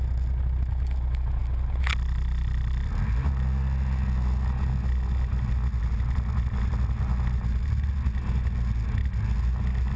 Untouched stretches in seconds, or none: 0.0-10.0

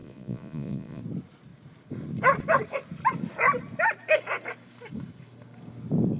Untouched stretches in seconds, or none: 1.0-6.2

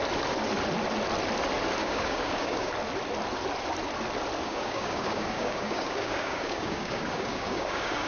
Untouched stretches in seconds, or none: 0.0-1.8; 2.7-4.4

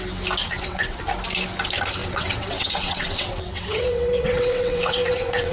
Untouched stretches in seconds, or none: 0.0-0.4; 1.0-2.0

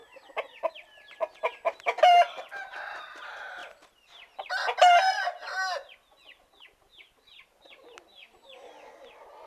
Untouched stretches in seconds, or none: 0.0-9.5

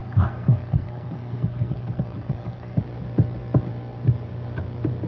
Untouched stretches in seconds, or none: 2.8-5.1

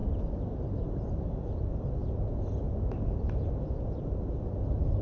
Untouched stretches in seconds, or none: 0.0-5.0

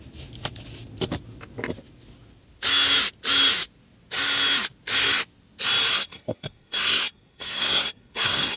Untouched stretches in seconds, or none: 0.0-5.9